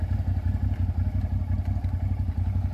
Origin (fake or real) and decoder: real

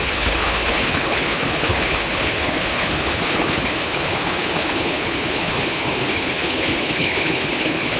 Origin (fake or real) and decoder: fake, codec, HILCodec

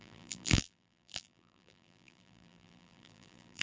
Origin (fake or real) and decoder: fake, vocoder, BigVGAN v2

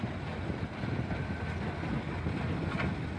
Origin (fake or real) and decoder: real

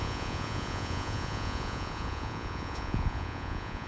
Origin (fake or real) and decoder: fake, vocoder, Vocos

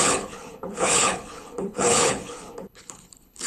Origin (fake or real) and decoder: fake, codec, HILCodec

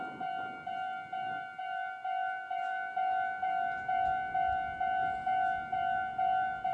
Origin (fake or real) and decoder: real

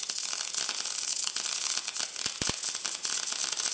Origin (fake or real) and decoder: real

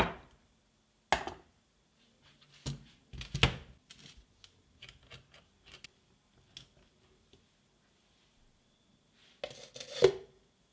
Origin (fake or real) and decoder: real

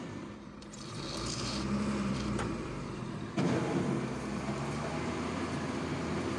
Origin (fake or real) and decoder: fake, vocoder, BigVGAN v2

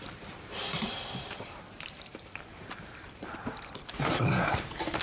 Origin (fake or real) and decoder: fake, vocoder, BigVGAN v2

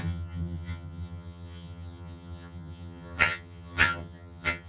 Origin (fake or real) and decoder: fake, vocoder, HiFi-GAN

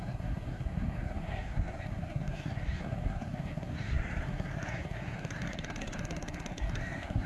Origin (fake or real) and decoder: fake, codec, SNAC